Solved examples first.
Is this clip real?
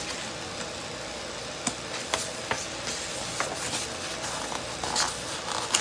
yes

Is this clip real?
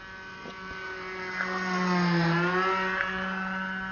yes